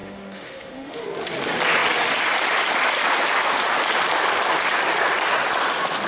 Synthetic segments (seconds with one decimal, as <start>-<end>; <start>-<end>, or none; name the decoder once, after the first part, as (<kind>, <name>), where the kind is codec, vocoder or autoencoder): 0.0-1.0 (autoencoder, DAC-VAE)